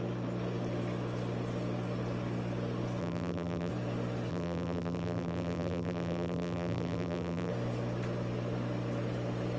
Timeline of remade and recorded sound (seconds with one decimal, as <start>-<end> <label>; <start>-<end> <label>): 0.0-3.0 recorded; 3.0-3.7 remade; 3.7-4.3 recorded; 4.3-7.5 remade; 7.5-9.6 recorded